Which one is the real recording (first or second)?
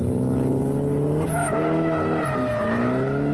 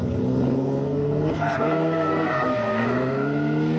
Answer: first